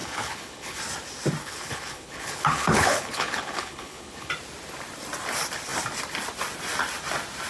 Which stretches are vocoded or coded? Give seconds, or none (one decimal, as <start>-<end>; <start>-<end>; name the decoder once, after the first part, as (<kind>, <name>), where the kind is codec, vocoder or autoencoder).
0.0-0.8 (codec, HILCodec); 1.4-4.3